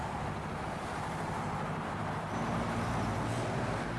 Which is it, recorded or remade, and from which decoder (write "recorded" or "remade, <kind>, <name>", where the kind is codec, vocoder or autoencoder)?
recorded